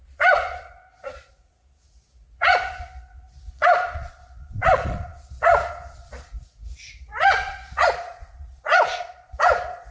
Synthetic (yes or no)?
yes